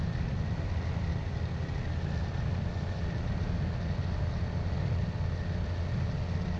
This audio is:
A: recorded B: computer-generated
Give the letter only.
A